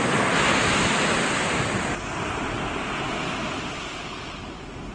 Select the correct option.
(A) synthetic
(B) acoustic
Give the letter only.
B